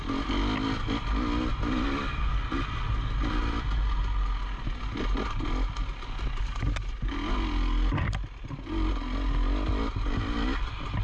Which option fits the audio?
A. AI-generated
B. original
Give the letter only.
B